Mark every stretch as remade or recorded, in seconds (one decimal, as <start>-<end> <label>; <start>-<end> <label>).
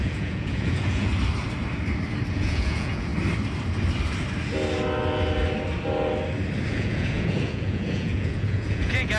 0.0-1.1 remade; 1.1-2.3 recorded; 2.3-3.1 remade; 3.1-6.7 recorded; 6.7-9.2 remade